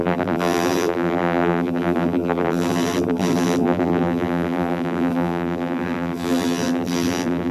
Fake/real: fake